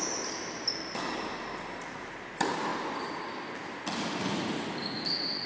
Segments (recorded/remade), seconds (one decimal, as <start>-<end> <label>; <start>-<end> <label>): 0.0-5.5 recorded

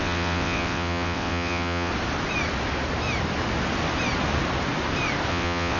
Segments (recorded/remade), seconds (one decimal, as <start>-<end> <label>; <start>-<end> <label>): 0.0-1.9 remade; 1.9-5.3 recorded; 5.3-5.8 remade

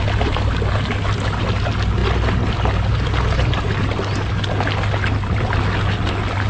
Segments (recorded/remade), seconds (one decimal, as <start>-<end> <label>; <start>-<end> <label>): 0.0-6.5 recorded

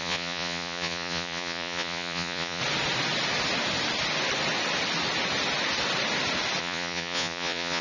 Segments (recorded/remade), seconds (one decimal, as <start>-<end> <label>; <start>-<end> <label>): 0.0-2.6 remade; 2.6-6.6 recorded; 6.6-7.8 remade

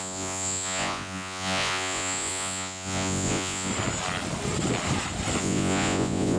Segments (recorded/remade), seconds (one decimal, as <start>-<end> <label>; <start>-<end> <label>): 0.0-3.7 remade; 3.7-5.4 recorded; 5.4-6.4 remade

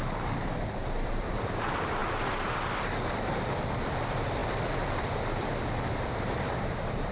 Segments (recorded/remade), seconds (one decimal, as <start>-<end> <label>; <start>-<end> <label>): 0.0-7.1 remade